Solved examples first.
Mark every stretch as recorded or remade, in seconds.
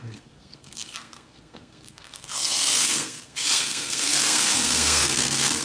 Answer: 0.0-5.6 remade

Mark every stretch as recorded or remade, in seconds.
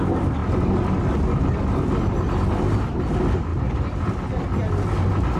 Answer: 0.0-5.4 recorded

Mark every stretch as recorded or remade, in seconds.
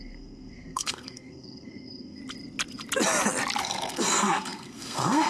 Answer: 0.0-2.2 remade; 2.2-3.6 recorded; 3.6-5.3 remade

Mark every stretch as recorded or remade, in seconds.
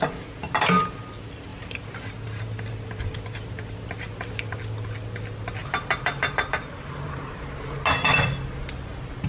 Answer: 0.0-1.5 recorded; 1.5-4.1 remade; 4.1-5.6 recorded; 5.6-7.5 remade; 7.5-9.3 recorded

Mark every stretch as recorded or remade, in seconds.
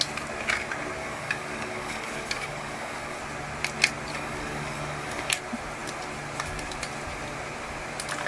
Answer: 0.0-1.0 recorded; 1.0-3.2 remade; 3.2-4.1 recorded; 4.1-5.3 remade; 5.3-8.3 recorded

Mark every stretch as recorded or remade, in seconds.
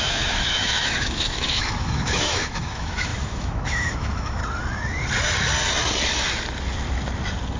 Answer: 0.0-4.4 remade; 4.4-7.6 recorded